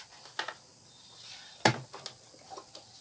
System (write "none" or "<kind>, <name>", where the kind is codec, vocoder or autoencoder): none